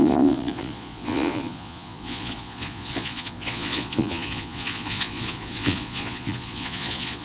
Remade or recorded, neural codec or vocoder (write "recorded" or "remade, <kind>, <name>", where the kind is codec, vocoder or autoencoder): remade, vocoder, Vocos